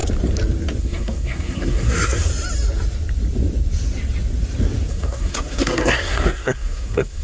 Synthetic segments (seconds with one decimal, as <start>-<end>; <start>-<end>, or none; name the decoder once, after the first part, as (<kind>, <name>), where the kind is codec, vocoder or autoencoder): 0.8-2.3 (codec, SNAC); 4.9-7.2